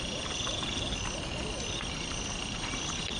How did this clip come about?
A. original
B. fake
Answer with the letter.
A